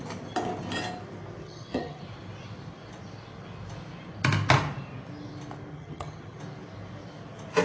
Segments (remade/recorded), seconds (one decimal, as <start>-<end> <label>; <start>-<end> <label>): 0.0-1.4 recorded; 1.4-2.0 remade; 2.0-5.7 recorded; 5.7-6.4 remade; 6.4-7.6 recorded